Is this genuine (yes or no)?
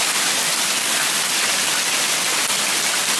yes